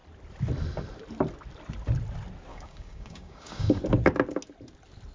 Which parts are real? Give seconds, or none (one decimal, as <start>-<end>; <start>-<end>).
0.0-2.5; 3.8-5.1